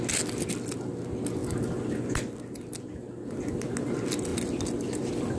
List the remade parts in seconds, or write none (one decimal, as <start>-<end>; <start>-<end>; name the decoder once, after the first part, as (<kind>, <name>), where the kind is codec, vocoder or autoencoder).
none